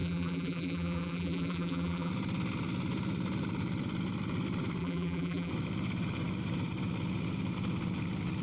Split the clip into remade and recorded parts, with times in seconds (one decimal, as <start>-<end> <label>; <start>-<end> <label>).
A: 0.0-2.1 remade; 2.1-4.8 recorded; 4.8-5.5 remade; 5.5-8.4 recorded